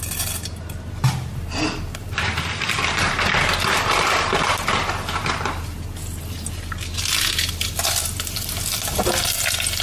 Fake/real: real